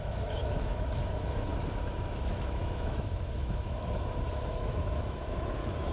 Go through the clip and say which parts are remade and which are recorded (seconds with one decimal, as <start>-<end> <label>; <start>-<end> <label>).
0.0-5.9 remade